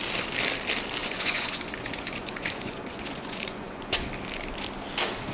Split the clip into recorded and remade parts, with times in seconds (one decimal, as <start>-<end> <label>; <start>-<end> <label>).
0.0-1.0 recorded; 1.0-4.1 remade; 4.1-5.3 recorded